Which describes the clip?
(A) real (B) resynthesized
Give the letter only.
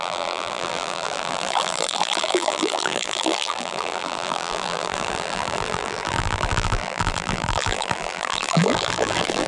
B